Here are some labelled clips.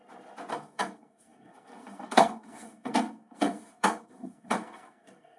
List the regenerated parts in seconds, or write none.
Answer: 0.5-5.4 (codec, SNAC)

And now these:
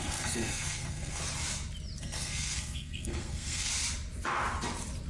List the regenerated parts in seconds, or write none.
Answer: 0.0-1.2 (codec, SNAC); 2.0-3.7

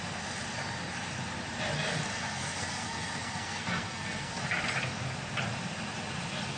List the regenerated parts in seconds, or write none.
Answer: 2.1-4.4 (codec, SNAC)

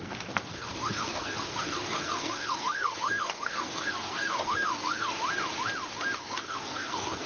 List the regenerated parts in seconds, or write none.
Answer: 0.0-5.2 (codec, SNAC); 6.2-7.3

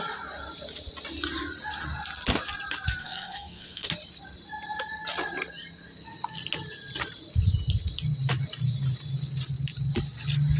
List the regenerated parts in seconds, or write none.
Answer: 3.0-3.9 (codec, SNAC)

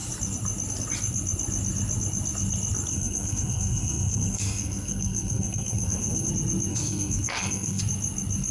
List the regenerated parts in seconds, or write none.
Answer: 2.9-6.3 (codec, SNAC); 6.7-7.8